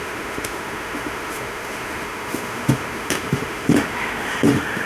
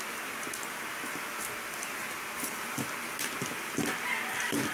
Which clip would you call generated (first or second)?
first